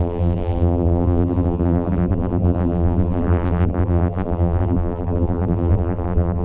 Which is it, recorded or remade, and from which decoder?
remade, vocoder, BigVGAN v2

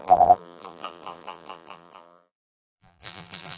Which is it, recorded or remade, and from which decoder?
remade, vocoder, BigVGAN v2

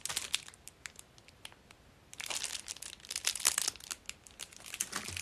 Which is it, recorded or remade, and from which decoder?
recorded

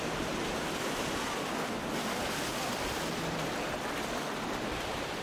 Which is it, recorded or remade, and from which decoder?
recorded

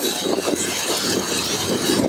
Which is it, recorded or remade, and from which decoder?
remade, vocoder, BigVGAN v2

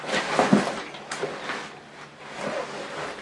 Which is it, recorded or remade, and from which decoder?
recorded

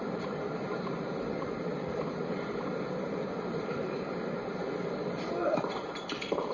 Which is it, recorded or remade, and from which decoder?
remade, vocoder, BigVGAN v2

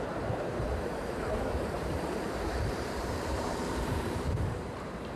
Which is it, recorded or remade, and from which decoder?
remade, vocoder, BigVGAN v2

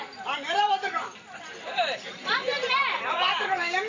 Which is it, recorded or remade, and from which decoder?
remade, vocoder, BigVGAN v2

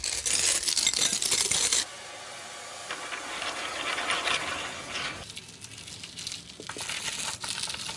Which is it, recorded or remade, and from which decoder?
recorded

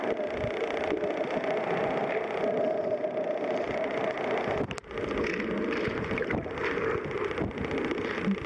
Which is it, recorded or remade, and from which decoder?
recorded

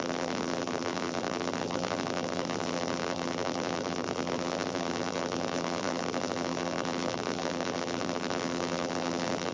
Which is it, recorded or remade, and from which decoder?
remade, vocoder, BigVGAN v2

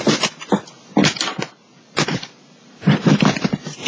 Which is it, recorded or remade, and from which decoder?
remade, vocoder, BigVGAN v2